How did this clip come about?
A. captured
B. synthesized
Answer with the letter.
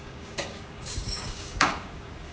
B